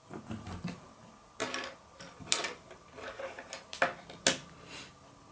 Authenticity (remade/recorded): recorded